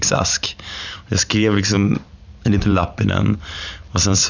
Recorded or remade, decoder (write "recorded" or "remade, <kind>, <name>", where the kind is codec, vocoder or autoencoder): remade, vocoder, BigVGAN v2